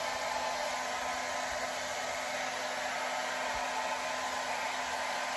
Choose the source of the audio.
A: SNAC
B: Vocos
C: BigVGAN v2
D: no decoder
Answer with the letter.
D